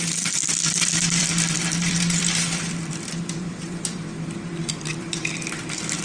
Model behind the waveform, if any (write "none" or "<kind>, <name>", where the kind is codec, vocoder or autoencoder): vocoder, BigVGAN v2